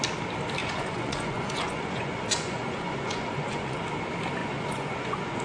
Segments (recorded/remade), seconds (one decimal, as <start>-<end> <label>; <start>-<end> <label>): 0.0-0.6 recorded; 0.6-3.8 remade; 3.8-4.4 recorded; 4.4-5.4 remade